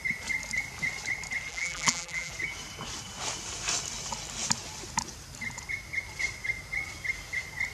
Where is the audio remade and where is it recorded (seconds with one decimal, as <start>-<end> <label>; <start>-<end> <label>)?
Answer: 0.0-1.5 recorded; 1.5-2.3 remade; 2.3-7.7 recorded